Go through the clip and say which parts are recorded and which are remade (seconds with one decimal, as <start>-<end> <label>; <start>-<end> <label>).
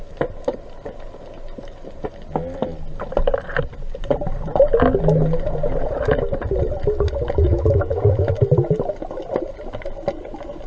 0.0-7.5 recorded; 7.5-8.4 remade; 8.4-10.7 recorded